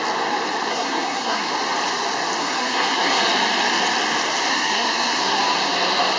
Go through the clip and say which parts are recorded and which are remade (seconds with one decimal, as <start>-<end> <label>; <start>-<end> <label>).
0.0-0.7 recorded; 0.7-1.5 remade; 1.5-2.4 recorded; 2.4-3.2 remade; 3.2-4.5 recorded; 4.5-5.4 remade; 5.4-6.2 recorded